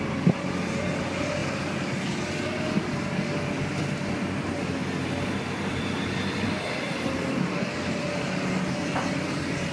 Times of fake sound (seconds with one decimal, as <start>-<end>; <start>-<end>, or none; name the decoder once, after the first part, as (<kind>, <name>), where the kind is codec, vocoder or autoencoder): none

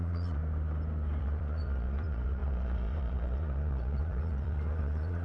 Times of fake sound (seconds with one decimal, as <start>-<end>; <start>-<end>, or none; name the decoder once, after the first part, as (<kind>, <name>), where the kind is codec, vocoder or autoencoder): 0.0-0.4 (vocoder, Vocos); 1.2-5.2

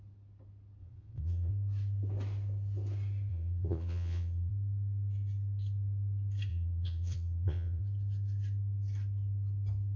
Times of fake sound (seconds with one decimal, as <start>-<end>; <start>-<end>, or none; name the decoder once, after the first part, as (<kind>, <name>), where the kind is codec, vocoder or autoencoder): 0.8-1.5 (vocoder, Vocos); 3.3-4.5; 6.5-7.8

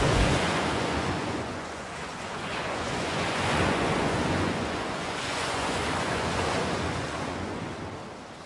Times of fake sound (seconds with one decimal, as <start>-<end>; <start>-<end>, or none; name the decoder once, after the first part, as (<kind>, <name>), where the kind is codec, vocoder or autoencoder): 0.0-7.7 (vocoder, Vocos)

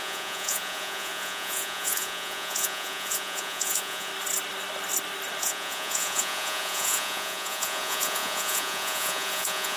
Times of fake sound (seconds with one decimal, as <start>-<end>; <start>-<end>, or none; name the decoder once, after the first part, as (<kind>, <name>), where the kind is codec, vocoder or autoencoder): 0.0-4.1 (vocoder, Vocos); 5.4-9.8